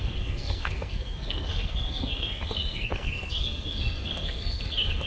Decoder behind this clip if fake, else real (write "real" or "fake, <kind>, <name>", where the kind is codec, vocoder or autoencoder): fake, codec, SNAC